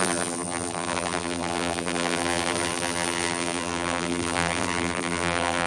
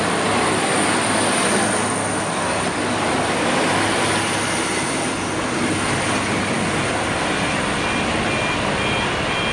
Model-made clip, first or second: first